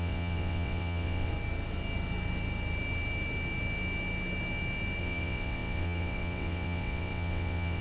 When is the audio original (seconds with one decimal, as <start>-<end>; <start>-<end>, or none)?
1.3-5.0